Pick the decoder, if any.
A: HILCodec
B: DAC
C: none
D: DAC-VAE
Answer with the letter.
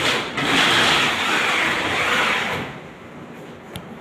C